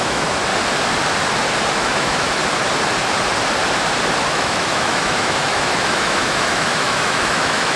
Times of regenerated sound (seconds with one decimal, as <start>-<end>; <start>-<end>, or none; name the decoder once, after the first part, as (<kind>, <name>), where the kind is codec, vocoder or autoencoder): 0.0-0.5 (autoencoder, DAC-VAE); 1.8-2.4; 4.3-7.8